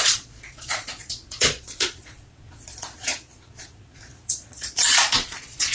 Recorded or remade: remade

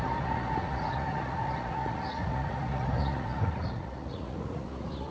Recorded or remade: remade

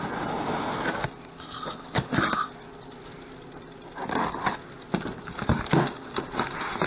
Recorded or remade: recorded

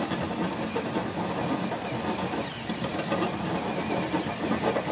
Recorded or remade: recorded